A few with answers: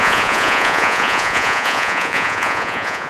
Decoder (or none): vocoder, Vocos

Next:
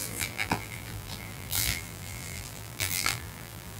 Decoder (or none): vocoder, BigVGAN v2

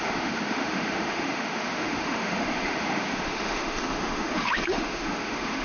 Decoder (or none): autoencoder, DAC-VAE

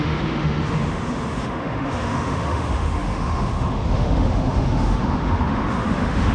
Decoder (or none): autoencoder, DAC-VAE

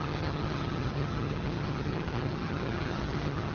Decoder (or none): vocoder, HiFi-GAN